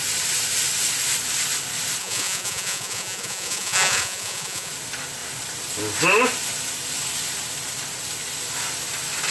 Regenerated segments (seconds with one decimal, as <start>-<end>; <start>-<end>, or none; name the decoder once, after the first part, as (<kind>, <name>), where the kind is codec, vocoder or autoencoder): 2.0-4.7 (vocoder, Vocos)

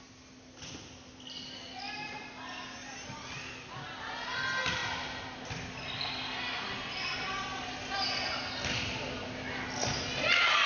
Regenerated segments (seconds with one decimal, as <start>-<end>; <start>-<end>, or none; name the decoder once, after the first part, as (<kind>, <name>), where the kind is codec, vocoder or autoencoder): none

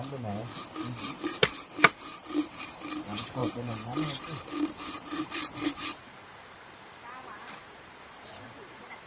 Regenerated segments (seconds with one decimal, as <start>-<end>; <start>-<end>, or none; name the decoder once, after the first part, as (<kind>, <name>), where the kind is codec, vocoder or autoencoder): 0.0-0.5 (vocoder, BigVGAN v2); 1.0-9.1

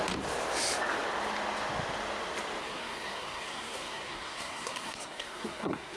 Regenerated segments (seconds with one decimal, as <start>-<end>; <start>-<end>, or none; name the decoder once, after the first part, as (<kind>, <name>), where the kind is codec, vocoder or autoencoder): 2.6-6.0 (codec, SNAC)